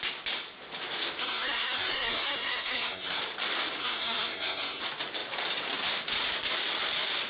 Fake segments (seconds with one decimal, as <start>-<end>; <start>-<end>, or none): 1.2-3.2; 3.8-4.8